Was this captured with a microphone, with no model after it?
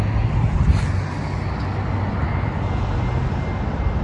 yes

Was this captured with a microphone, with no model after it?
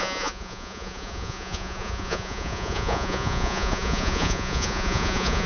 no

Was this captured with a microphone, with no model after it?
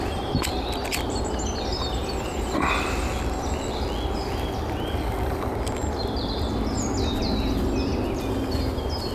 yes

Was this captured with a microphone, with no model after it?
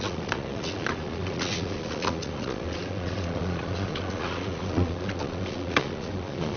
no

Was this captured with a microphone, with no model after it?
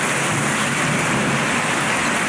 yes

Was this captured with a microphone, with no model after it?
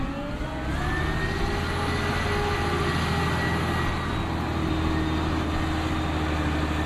yes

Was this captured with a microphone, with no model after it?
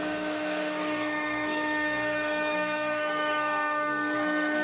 no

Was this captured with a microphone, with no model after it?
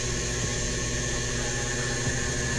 yes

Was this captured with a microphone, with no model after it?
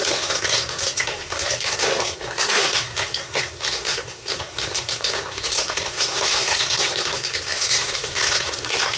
no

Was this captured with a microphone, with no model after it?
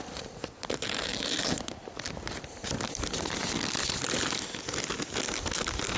yes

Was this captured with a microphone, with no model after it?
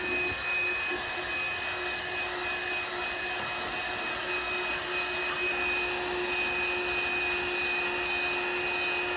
yes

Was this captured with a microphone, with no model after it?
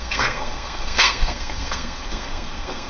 no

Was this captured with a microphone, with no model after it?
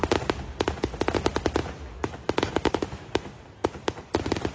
yes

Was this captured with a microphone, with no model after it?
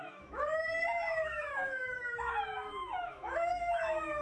no